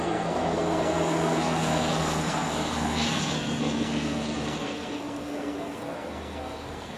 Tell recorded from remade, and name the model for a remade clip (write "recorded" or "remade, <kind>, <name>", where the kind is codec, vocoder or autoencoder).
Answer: remade, codec, SNAC